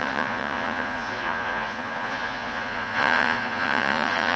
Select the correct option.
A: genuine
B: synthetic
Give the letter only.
B